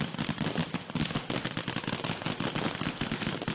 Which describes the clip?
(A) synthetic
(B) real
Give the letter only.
B